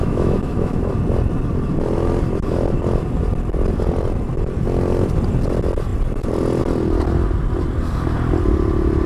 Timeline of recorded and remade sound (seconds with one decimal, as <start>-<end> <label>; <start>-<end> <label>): 0.0-0.9 remade; 0.9-9.1 recorded